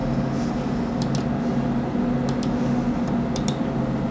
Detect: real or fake real